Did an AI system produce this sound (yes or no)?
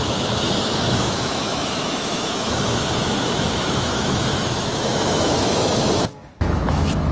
yes